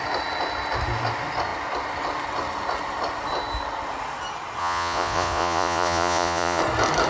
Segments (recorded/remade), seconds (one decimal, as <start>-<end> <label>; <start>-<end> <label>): 0.0-4.6 recorded; 4.6-6.6 remade; 6.6-7.1 recorded